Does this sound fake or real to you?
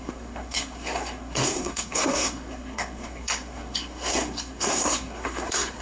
fake